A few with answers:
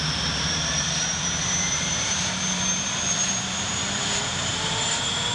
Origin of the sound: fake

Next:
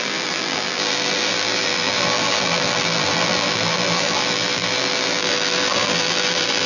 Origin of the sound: fake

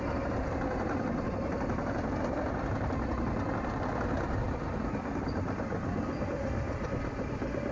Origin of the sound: real